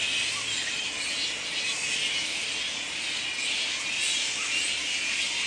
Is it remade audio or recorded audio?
recorded